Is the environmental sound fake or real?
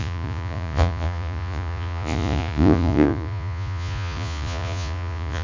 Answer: fake